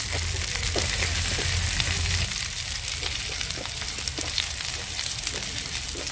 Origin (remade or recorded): recorded